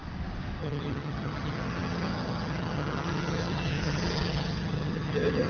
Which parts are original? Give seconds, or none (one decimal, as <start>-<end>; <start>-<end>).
0.0-0.6